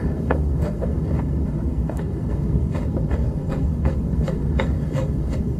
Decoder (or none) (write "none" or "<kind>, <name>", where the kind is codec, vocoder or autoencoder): codec, SNAC